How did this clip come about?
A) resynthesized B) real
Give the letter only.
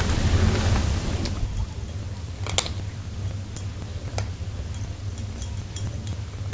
B